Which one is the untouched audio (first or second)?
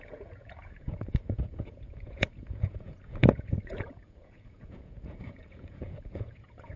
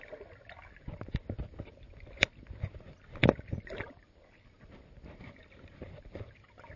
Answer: second